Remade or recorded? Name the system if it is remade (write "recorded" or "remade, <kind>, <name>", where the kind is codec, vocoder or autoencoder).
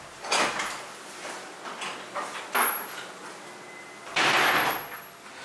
recorded